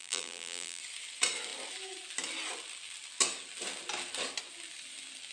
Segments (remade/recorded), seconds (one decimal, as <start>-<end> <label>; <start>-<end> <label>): 0.0-0.8 remade; 0.8-5.3 recorded